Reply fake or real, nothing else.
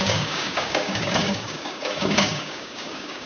fake